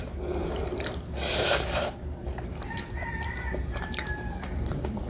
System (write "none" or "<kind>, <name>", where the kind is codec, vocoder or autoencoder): vocoder, BigVGAN v2